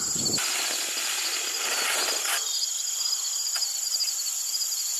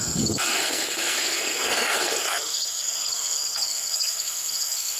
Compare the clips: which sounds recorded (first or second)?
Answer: first